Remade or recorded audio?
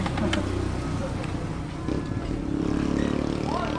recorded